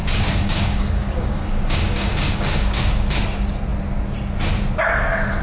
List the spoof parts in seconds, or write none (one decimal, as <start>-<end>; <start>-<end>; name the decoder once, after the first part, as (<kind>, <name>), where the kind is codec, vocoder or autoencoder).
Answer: 0.0-3.2 (codec, DAC)